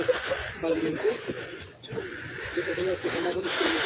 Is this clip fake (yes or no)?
yes